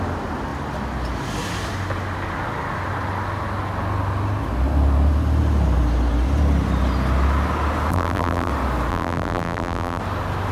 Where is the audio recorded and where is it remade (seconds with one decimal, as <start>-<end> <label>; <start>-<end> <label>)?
0.0-7.9 recorded; 7.9-8.5 remade; 8.5-8.9 recorded; 8.9-10.0 remade; 10.0-10.5 recorded